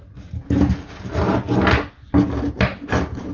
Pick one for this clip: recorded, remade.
recorded